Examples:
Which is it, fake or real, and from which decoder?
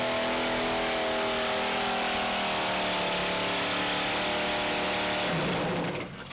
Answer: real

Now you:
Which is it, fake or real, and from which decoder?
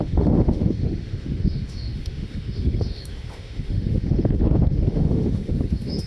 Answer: fake, autoencoder, DAC-VAE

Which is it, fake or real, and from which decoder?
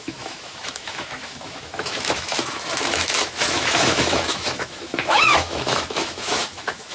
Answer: fake, autoencoder, DAC-VAE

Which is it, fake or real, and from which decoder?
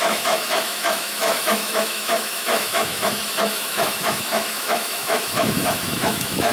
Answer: fake, autoencoder, DAC-VAE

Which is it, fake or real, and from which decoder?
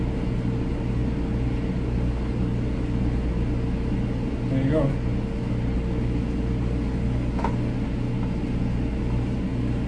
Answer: real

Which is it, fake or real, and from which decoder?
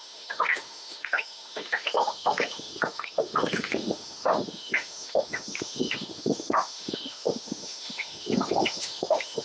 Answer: fake, autoencoder, DAC-VAE